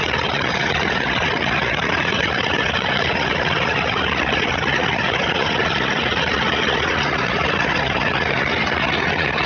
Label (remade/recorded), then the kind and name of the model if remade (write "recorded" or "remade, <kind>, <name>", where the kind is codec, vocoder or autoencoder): remade, vocoder, Vocos